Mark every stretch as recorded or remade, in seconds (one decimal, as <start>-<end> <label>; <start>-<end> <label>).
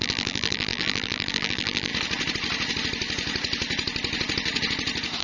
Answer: 0.0-1.9 remade; 1.9-5.2 recorded